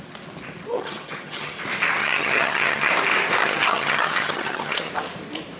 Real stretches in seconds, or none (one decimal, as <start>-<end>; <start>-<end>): 0.0-0.7; 1.6-2.0; 2.9-3.4; 4.9-5.6